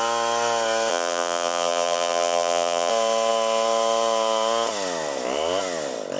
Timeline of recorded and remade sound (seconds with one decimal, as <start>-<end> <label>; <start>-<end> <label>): 0.0-0.9 recorded; 0.9-2.9 remade; 2.9-6.2 recorded